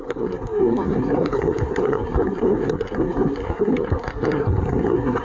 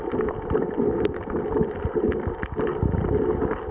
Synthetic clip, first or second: first